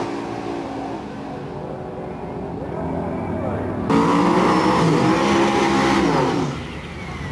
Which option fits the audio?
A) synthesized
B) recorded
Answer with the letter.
B